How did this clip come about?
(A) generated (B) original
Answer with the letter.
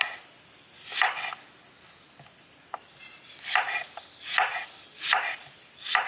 B